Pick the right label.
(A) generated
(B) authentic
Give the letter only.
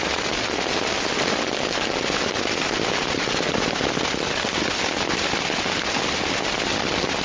B